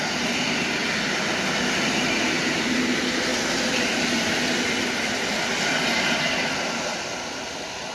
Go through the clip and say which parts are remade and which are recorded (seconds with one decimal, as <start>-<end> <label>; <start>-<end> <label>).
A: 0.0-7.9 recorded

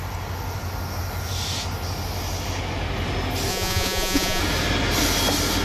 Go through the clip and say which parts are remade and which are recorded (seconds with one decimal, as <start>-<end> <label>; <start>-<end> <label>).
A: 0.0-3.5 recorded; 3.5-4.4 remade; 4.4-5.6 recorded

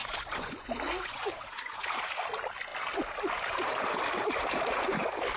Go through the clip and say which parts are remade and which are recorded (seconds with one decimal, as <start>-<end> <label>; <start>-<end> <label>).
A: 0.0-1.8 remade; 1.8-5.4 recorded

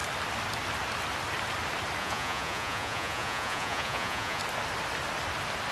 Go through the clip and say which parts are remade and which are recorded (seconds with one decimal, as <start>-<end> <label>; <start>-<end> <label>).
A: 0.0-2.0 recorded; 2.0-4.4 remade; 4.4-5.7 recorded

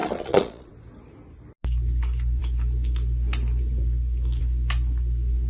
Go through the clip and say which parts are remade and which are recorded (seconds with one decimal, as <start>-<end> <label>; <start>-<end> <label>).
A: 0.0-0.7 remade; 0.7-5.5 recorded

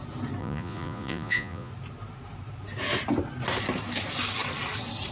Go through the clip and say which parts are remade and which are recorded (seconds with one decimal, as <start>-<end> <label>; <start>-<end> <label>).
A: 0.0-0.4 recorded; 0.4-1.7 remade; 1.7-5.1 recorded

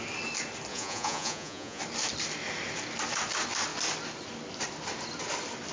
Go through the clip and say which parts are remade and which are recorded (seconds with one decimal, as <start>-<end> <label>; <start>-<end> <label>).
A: 0.0-0.7 recorded; 0.7-1.8 remade; 1.8-5.7 recorded

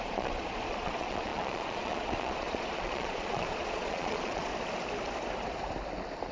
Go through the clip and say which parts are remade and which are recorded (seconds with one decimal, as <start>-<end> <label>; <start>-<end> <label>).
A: 0.0-4.5 remade; 4.5-6.3 recorded